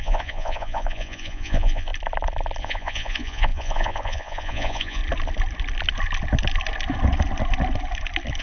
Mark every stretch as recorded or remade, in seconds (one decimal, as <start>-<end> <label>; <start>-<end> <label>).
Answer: 0.0-1.9 remade; 1.9-2.6 recorded; 2.6-5.0 remade; 5.0-8.4 recorded

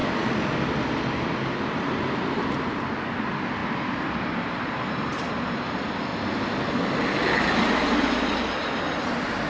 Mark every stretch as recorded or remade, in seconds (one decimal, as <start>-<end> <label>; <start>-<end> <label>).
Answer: 0.0-9.5 recorded

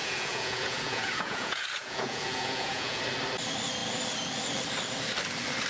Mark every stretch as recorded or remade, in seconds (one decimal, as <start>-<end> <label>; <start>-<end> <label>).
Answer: 0.0-3.0 remade; 3.0-5.7 recorded

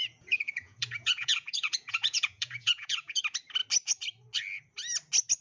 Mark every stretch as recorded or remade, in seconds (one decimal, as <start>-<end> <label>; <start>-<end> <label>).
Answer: 0.0-3.2 remade; 3.2-5.4 recorded

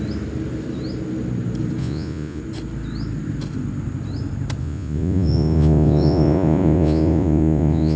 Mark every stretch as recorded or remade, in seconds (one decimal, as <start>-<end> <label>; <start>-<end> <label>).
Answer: 0.0-1.8 recorded; 1.8-2.4 remade; 2.4-4.6 recorded; 4.6-8.0 remade

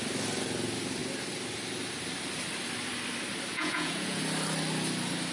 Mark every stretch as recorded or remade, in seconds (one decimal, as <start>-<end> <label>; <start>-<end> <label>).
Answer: 0.0-3.5 recorded; 3.5-4.2 remade; 4.2-5.3 recorded